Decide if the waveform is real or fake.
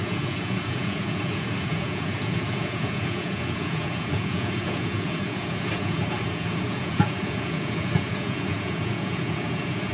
fake